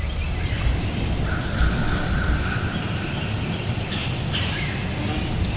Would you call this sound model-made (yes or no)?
no